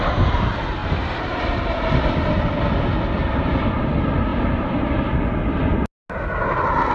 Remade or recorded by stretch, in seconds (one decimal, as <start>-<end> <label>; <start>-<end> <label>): 0.0-0.8 recorded; 0.8-1.3 remade; 1.3-3.2 recorded; 3.2-3.9 remade; 3.9-4.3 recorded; 4.3-4.9 remade; 4.9-6.9 recorded